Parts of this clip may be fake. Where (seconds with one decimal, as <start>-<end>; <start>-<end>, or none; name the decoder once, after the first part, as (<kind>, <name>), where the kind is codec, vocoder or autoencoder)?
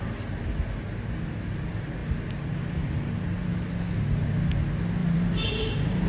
5.0-6.1 (vocoder, BigVGAN v2)